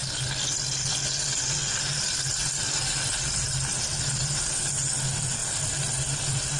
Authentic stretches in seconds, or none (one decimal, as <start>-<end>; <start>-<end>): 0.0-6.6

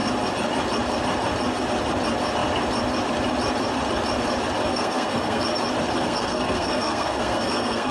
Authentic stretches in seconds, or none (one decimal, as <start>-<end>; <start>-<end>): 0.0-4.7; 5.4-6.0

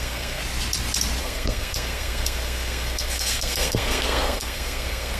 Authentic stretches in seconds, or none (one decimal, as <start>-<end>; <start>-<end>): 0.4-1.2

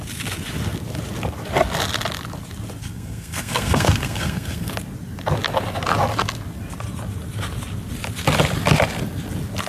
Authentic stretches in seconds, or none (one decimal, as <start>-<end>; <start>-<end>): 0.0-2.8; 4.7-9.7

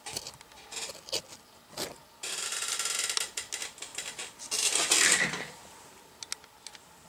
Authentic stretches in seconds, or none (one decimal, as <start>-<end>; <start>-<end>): 0.0-7.1

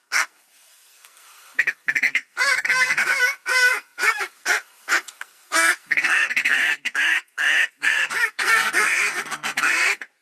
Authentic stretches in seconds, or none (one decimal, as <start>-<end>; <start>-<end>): none

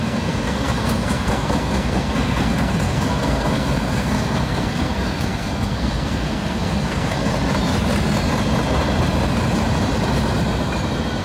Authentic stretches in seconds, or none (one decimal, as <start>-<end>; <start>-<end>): 7.3-11.2